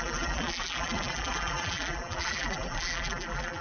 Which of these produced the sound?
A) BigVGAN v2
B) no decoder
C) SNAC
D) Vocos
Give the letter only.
A